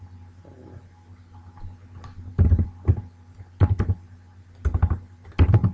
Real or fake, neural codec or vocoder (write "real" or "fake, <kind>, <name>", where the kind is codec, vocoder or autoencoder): real